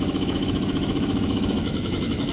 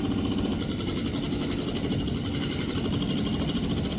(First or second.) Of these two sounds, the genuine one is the second